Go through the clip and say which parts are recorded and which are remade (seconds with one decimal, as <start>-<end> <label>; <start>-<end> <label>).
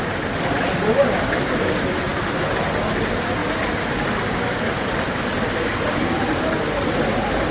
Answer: 0.0-7.5 recorded